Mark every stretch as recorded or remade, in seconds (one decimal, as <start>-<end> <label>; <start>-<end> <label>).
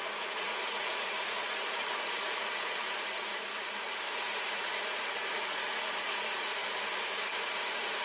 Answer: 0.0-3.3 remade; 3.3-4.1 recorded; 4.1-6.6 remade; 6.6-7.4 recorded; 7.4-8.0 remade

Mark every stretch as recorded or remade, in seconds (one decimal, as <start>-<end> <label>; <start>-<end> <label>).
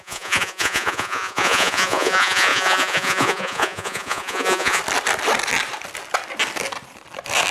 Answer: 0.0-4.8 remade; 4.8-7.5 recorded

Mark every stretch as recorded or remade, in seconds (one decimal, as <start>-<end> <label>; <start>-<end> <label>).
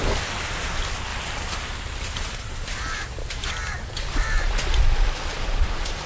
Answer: 0.0-6.1 recorded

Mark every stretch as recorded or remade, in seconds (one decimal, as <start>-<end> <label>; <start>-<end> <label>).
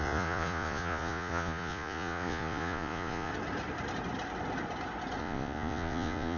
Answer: 0.0-3.3 remade; 3.3-5.2 recorded; 5.2-6.4 remade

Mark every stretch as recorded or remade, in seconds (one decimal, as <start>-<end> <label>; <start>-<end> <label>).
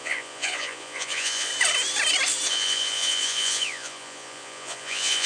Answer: 0.0-1.5 remade; 1.5-2.5 recorded; 2.5-5.3 remade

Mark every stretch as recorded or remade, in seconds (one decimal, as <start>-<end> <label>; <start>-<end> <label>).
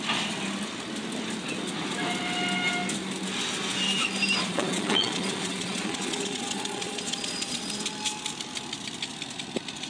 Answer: 0.0-4.4 recorded; 4.4-7.7 remade; 7.7-9.9 recorded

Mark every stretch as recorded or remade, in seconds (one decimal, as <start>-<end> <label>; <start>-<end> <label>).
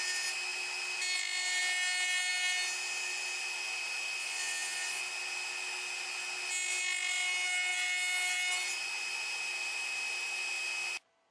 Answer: 0.0-4.2 recorded; 4.2-5.0 remade; 5.0-11.3 recorded